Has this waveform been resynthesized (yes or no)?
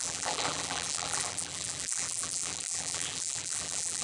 yes